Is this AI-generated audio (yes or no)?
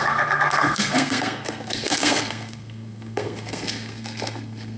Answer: yes